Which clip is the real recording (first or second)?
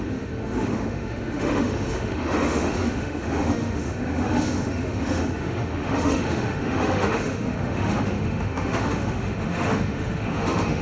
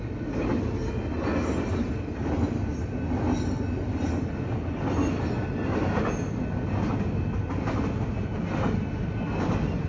second